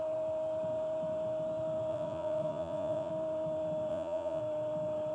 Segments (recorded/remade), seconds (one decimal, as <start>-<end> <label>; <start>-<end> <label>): 0.0-1.9 recorded; 1.9-3.1 remade; 3.1-3.9 recorded; 3.9-4.4 remade; 4.4-5.1 recorded